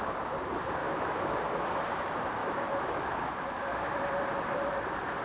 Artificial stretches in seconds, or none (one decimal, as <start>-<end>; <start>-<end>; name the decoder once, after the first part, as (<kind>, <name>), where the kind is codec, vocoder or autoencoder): 0.8-1.4 (autoencoder, DAC-VAE); 2.4-3.1